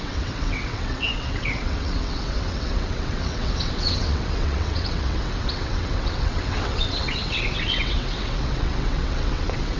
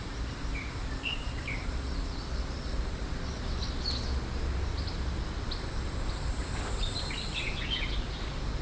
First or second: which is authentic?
second